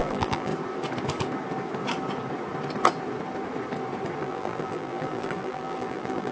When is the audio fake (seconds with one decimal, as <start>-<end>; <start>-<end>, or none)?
0.0-0.5; 4.2-6.3